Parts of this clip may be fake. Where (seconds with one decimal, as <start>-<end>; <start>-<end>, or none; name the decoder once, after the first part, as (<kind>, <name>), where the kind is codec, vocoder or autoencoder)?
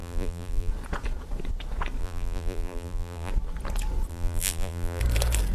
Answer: 0.0-0.7 (vocoder, BigVGAN v2); 2.0-3.3; 4.1-5.0